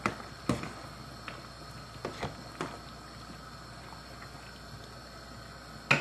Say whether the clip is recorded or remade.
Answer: recorded